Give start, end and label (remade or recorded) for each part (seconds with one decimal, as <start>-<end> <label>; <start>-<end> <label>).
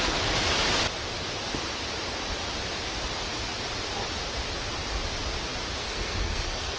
0.0-5.8 recorded; 5.8-6.8 remade